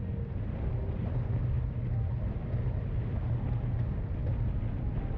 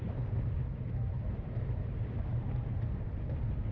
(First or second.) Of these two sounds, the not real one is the second